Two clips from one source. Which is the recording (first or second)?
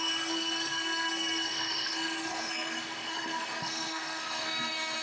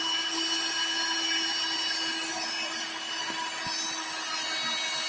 second